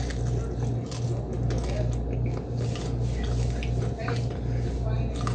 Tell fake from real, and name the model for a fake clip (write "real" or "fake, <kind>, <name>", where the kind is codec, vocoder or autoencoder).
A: real